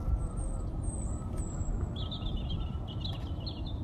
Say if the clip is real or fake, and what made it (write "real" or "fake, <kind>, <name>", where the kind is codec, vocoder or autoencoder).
real